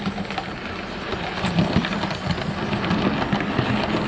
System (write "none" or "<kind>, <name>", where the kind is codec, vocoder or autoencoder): none